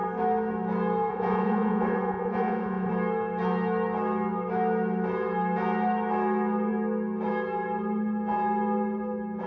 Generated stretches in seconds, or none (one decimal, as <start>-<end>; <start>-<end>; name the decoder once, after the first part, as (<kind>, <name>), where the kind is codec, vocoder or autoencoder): 1.1-2.9 (vocoder, Vocos)